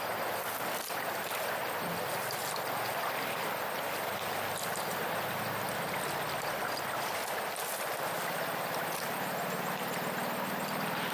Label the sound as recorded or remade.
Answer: recorded